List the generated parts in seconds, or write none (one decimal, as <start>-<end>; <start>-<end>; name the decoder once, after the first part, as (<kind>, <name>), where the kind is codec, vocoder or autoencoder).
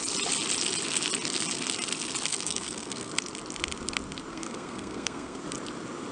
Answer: 2.3-3.1 (codec, SNAC); 4.3-5.4